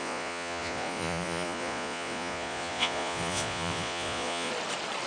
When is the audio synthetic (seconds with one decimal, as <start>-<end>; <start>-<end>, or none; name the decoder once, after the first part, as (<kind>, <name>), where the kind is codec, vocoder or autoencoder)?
0.0-4.5 (vocoder, Vocos)